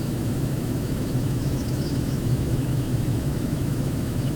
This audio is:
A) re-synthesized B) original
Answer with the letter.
A